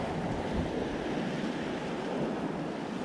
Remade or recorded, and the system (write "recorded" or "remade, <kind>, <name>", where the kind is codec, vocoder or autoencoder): recorded